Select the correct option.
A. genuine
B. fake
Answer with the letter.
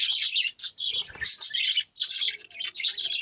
A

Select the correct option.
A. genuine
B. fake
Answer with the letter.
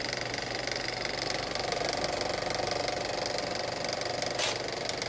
A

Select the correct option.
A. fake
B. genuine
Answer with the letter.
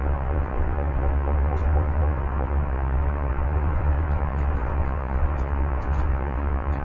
A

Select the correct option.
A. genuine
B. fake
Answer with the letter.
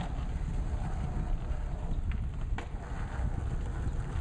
A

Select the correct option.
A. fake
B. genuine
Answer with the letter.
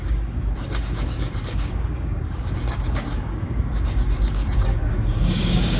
A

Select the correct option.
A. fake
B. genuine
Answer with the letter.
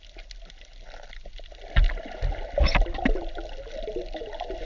B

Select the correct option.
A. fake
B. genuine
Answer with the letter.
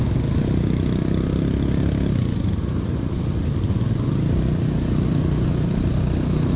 B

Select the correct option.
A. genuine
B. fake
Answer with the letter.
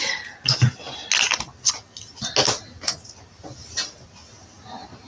A